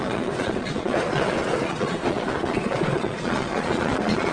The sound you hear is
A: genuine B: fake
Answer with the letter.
B